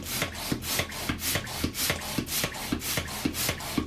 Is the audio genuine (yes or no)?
yes